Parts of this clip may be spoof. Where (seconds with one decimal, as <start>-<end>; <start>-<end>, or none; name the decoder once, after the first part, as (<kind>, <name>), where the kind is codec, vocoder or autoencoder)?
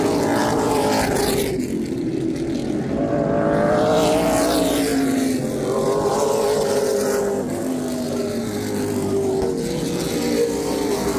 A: 0.4-1.6 (vocoder, BigVGAN v2)